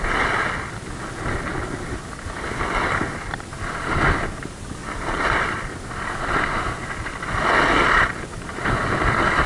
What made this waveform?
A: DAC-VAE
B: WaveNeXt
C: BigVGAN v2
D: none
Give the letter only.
D